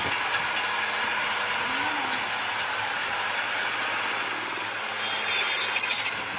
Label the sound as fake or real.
real